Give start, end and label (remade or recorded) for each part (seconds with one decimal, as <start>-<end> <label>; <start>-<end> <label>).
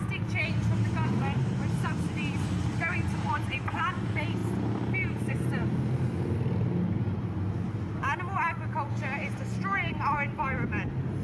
0.0-11.2 recorded